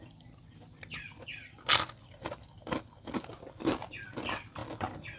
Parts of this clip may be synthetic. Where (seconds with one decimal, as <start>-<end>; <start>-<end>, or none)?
none